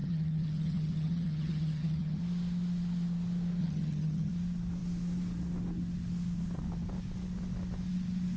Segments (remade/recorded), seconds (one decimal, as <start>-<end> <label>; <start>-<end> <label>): 0.0-2.2 remade; 2.2-3.6 recorded; 3.6-4.3 remade; 4.3-8.4 recorded